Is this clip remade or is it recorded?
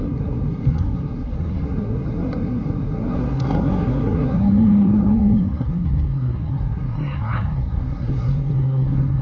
remade